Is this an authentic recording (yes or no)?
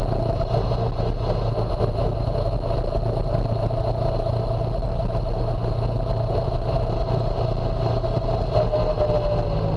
yes